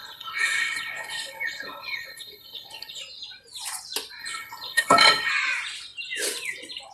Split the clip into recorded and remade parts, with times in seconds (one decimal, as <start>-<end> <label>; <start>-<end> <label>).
0.0-3.0 remade; 3.0-4.2 recorded; 4.2-5.3 remade; 5.3-6.9 recorded